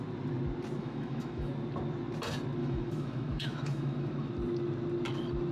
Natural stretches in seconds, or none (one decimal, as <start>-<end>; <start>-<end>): 0.0-0.8; 1.5-2.6; 4.3-5.5